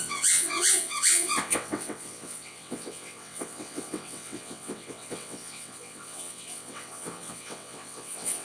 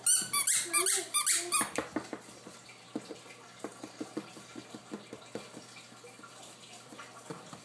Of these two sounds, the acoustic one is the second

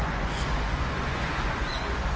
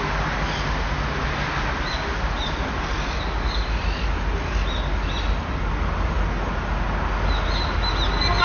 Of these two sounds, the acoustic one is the second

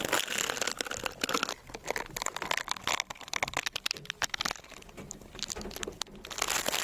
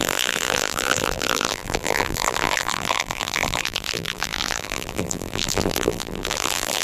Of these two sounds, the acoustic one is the first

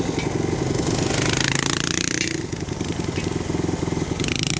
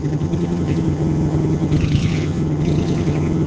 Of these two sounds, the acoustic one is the first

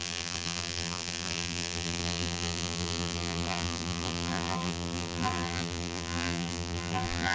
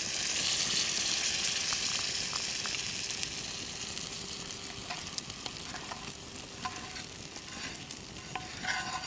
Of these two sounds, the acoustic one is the second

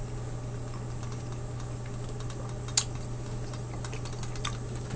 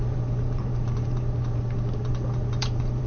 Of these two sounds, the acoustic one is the first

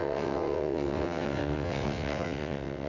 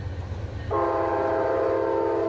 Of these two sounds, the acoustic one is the second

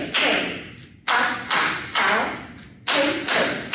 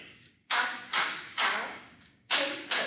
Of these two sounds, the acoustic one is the first